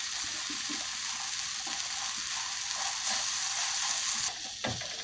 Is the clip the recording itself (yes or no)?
yes